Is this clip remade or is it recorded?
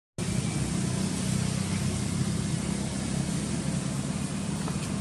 recorded